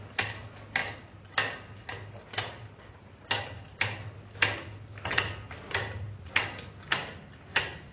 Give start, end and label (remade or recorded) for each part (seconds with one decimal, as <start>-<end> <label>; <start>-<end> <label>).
0.0-7.9 recorded